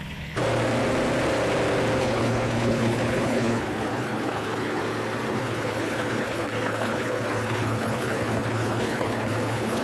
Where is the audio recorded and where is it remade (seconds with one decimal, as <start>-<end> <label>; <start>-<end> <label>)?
0.0-0.4 remade; 0.4-2.0 recorded; 2.0-4.8 remade; 4.8-5.3 recorded; 5.3-9.8 remade